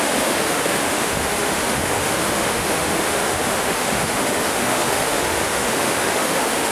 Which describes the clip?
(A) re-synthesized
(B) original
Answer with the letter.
A